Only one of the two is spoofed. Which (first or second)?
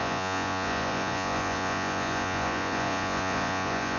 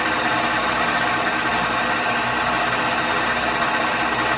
first